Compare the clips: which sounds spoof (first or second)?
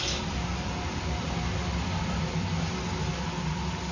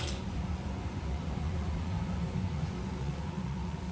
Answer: second